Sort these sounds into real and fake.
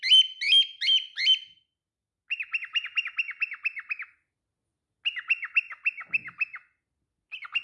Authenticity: real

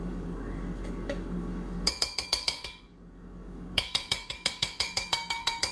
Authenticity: fake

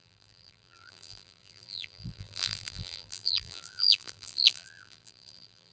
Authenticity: fake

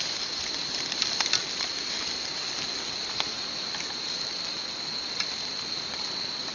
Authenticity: real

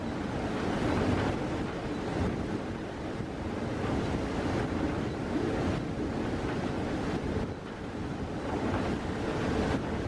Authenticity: real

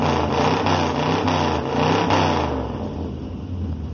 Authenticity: real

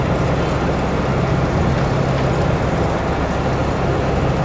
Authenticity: real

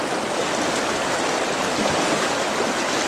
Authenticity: real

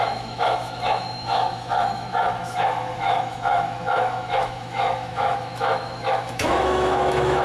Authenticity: fake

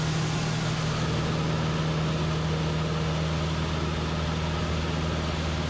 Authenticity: real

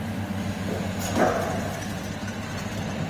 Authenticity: real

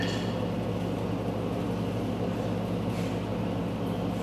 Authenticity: real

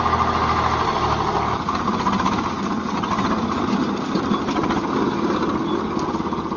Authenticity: real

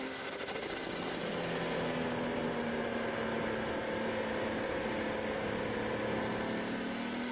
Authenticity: real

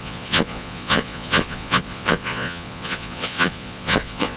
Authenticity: fake